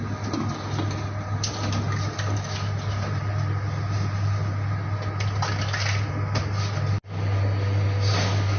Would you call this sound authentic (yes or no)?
yes